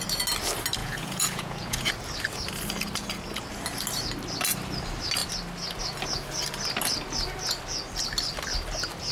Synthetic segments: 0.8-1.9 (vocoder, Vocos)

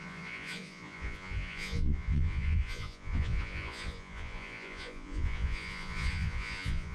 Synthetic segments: 0.0-6.9 (vocoder, Vocos)

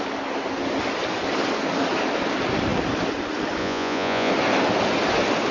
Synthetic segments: 3.6-4.3 (vocoder, Vocos)

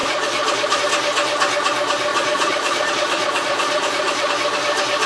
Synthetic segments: 0.0-0.8 (vocoder, Vocos); 2.1-4.3

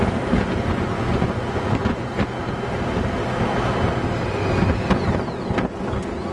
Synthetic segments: 0.6-2.1 (vocoder, Vocos)

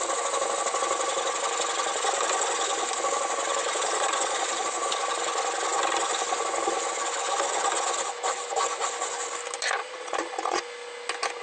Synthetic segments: 3.6-4.5 (vocoder, Vocos); 9.8-10.6

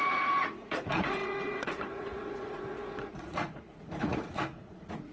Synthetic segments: 0.0-5.1 (vocoder, Vocos)

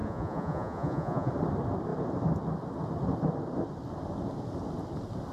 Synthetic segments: 0.0-1.3 (vocoder, Vocos)